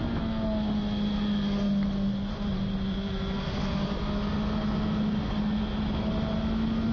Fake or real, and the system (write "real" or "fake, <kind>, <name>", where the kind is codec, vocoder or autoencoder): real